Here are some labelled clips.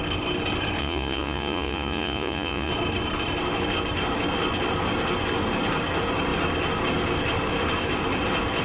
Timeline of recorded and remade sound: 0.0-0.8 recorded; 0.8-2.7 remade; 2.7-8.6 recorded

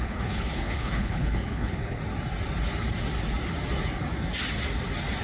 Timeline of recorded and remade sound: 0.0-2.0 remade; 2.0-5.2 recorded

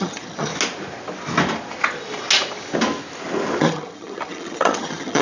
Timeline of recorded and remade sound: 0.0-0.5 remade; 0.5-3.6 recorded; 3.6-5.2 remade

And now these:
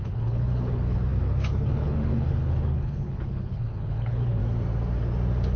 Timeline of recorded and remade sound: 0.0-4.4 remade; 4.4-5.6 recorded

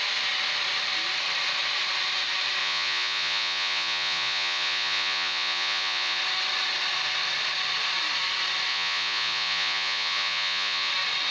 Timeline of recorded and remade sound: 0.0-2.6 recorded; 2.6-6.2 remade; 6.2-8.7 recorded; 8.7-10.9 remade; 10.9-11.3 recorded

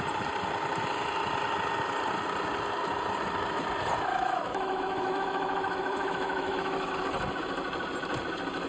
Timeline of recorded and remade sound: 0.0-4.1 recorded; 4.1-6.9 remade; 6.9-8.7 recorded